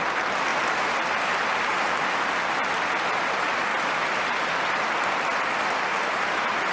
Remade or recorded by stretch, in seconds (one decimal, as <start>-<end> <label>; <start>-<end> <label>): 0.0-3.7 recorded; 3.7-4.3 remade; 4.3-6.7 recorded